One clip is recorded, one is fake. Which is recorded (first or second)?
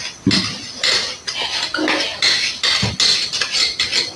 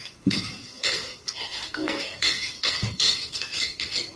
first